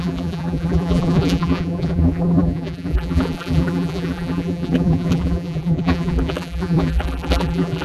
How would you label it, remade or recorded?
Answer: remade